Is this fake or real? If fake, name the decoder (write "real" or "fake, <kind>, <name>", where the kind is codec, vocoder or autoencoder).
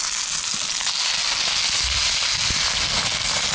real